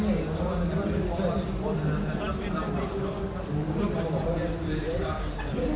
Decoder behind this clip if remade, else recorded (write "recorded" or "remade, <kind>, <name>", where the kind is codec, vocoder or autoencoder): recorded